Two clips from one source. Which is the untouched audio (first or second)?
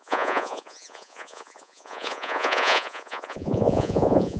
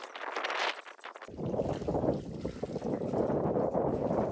second